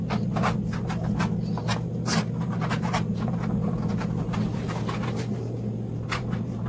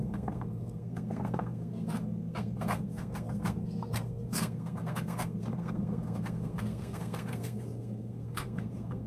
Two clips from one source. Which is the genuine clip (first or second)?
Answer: first